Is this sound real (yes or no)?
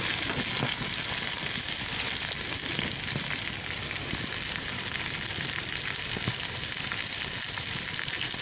yes